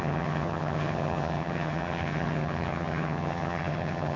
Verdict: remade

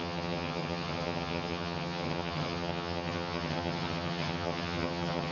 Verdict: remade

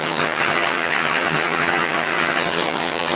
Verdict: remade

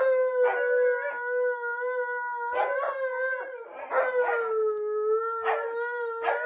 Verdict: recorded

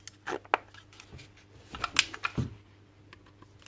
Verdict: recorded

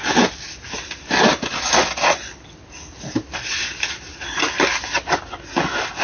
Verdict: recorded